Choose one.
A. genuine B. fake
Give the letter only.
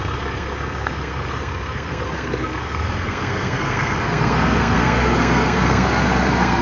B